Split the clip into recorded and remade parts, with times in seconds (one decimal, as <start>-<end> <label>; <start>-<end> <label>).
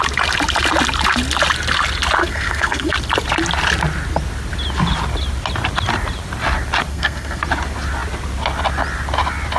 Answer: 0.0-2.2 recorded; 2.2-2.9 remade; 2.9-6.9 recorded; 6.9-7.4 remade; 7.4-9.6 recorded